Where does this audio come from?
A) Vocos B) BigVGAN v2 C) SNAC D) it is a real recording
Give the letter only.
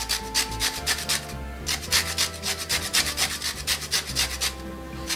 D